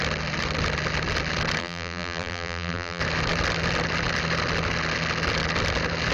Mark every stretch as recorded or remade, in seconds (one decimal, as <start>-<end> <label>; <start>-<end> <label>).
0.0-1.6 recorded; 1.6-3.0 remade; 3.0-6.1 recorded